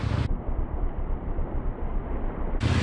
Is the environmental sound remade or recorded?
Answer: recorded